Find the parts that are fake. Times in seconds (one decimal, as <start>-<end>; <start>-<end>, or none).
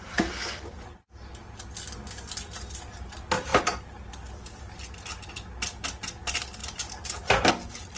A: none